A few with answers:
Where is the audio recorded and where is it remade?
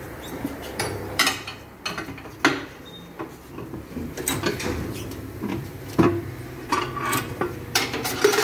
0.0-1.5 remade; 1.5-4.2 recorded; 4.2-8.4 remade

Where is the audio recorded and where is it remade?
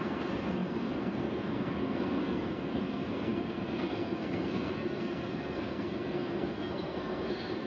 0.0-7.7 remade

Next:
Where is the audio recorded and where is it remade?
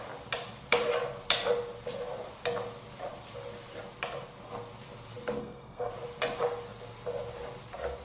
0.0-5.4 recorded; 5.4-5.9 remade; 5.9-8.0 recorded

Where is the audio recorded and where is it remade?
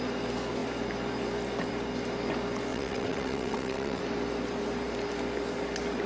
0.0-2.7 recorded; 2.7-4.0 remade; 4.0-6.1 recorded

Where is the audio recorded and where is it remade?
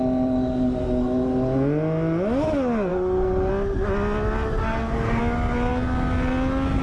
0.0-2.9 recorded; 2.9-3.5 remade; 3.5-4.6 recorded; 4.6-5.2 remade; 5.2-6.8 recorded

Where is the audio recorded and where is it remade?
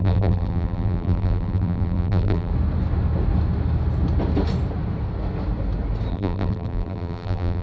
0.0-2.5 remade; 2.5-6.1 recorded; 6.1-7.6 remade